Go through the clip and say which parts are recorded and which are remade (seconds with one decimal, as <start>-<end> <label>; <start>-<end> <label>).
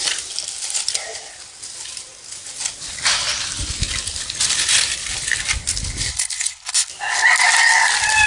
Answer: 0.0-6.1 recorded; 6.1-6.9 remade; 6.9-8.3 recorded